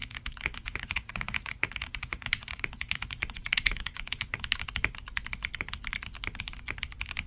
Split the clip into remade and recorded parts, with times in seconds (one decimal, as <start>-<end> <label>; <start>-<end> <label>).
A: 0.0-4.4 remade; 4.4-7.3 recorded